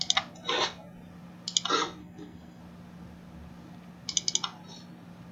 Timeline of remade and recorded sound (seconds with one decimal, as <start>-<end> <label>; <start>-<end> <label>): 0.0-2.0 recorded; 2.0-2.6 remade; 2.6-5.3 recorded